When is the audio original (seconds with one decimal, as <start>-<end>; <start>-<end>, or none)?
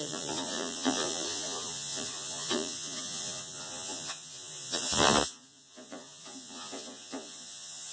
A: none